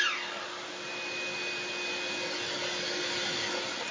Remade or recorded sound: recorded